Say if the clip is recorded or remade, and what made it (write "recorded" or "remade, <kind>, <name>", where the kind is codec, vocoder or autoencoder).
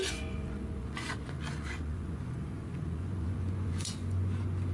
remade, vocoder, Vocos